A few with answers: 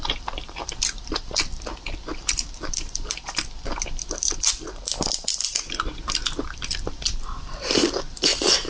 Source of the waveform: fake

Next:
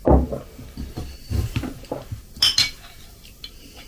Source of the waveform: real